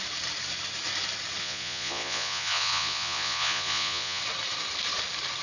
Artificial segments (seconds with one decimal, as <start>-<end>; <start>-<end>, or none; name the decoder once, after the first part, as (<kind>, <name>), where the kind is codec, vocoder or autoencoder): 1.4-4.2 (vocoder, Vocos)